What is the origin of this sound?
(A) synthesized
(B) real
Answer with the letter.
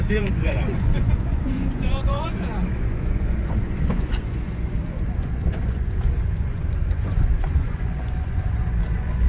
A